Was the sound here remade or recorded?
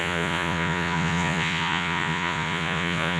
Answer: remade